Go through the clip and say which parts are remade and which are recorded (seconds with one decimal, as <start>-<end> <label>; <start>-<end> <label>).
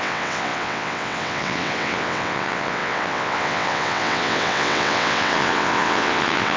0.0-6.6 remade